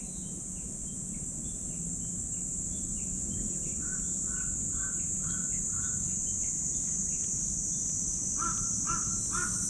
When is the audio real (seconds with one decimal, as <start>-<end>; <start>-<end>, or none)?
0.0-9.7